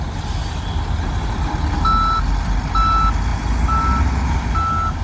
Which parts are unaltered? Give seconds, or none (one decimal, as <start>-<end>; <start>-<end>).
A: 0.0-5.0